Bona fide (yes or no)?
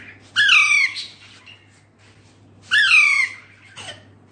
yes